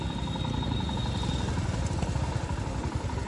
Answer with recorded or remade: recorded